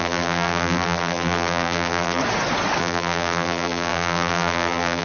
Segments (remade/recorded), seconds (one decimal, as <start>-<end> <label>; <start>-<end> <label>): 0.0-2.2 remade; 2.2-2.8 recorded; 2.8-5.0 remade

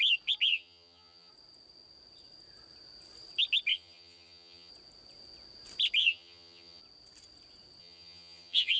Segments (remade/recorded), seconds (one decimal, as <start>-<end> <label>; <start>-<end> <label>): 0.0-0.5 recorded; 0.5-1.3 remade; 1.3-3.7 recorded; 3.7-4.7 remade; 4.7-6.0 recorded; 6.0-6.8 remade; 6.8-7.8 recorded; 7.8-8.8 remade

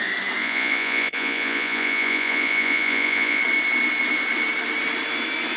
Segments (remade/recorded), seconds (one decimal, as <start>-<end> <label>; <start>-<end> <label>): 0.0-0.4 recorded; 0.4-3.4 remade; 3.4-5.6 recorded